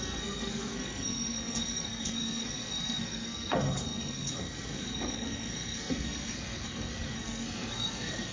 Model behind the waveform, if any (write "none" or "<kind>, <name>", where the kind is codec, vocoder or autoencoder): codec, SNAC